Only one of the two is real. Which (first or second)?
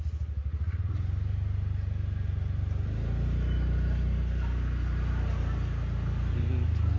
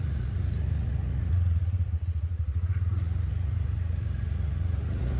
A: first